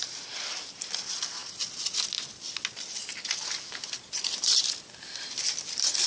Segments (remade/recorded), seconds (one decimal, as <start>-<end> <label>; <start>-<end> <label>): 0.0-1.4 remade; 1.4-3.6 recorded; 3.6-6.1 remade